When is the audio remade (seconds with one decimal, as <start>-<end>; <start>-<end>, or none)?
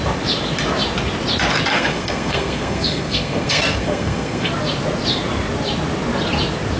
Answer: 1.7-4.5